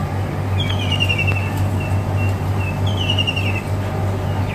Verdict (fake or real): real